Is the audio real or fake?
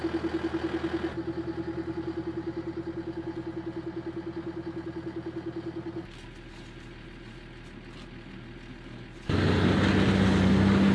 real